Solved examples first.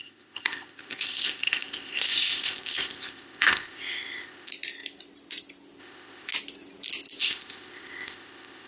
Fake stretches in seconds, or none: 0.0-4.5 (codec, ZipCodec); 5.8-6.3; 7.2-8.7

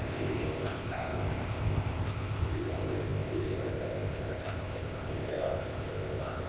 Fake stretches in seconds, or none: 0.0-6.5 (codec, ZipCodec)